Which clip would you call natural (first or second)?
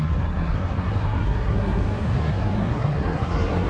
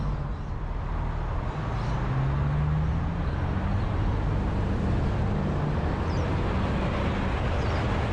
second